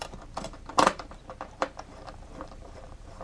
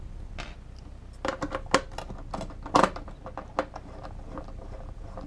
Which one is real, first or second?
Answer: second